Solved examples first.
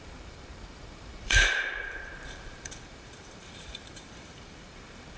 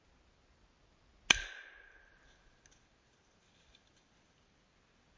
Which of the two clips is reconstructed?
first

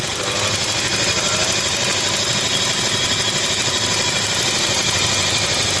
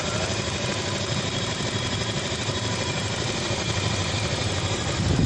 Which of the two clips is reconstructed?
second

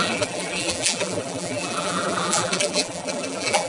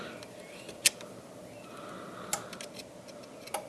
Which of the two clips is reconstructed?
first